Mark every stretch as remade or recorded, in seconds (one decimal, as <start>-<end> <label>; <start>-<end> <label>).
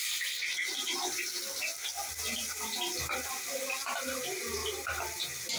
0.0-5.6 recorded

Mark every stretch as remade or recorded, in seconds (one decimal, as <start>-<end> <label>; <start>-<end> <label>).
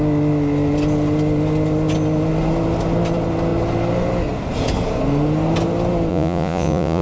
0.0-6.1 recorded; 6.1-7.0 remade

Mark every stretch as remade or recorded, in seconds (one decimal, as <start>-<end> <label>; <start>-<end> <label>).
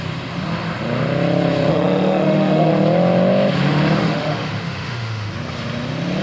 0.0-1.7 recorded; 1.7-2.7 remade; 2.7-4.0 recorded; 4.0-5.3 remade; 5.3-6.2 recorded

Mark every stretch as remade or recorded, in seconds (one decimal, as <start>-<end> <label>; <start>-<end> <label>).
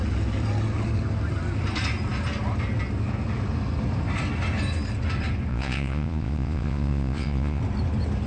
0.0-5.5 recorded; 5.5-7.6 remade; 7.6-8.3 recorded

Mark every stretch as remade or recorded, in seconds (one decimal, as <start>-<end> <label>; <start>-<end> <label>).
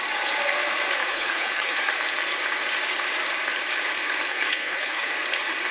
0.0-1.0 recorded; 1.0-1.8 remade; 1.8-4.3 recorded; 4.3-5.1 remade; 5.1-5.7 recorded